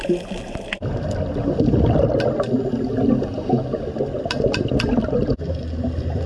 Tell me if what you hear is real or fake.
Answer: real